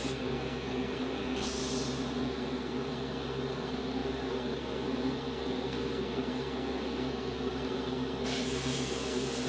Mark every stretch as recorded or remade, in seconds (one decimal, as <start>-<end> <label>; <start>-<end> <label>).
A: 0.0-1.6 remade; 1.6-2.2 recorded; 2.2-9.5 remade

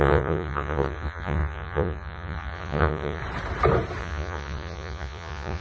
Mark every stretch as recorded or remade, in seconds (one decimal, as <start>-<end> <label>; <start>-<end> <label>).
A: 0.0-3.2 remade; 3.2-4.0 recorded; 4.0-5.6 remade

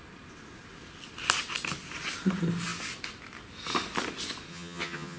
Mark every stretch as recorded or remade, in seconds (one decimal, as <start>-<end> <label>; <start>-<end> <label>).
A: 0.0-4.5 recorded; 4.5-5.2 remade

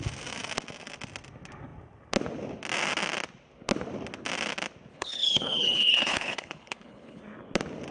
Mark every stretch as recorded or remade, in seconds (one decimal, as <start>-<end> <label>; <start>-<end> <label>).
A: 0.0-4.9 recorded; 4.9-7.2 remade; 7.2-7.9 recorded

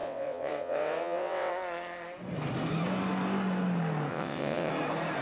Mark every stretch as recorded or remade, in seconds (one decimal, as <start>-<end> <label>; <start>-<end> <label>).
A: 0.0-1.5 remade; 1.5-4.1 recorded; 4.1-4.7 remade; 4.7-5.2 recorded